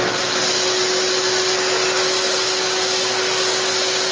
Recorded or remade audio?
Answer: recorded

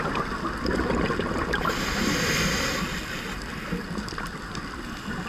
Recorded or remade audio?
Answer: recorded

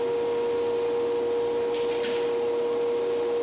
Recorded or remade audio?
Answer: recorded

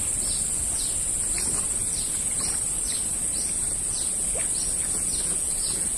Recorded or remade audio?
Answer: recorded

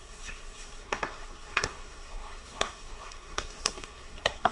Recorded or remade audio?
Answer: remade